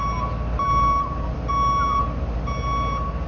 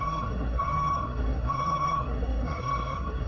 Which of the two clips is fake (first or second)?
second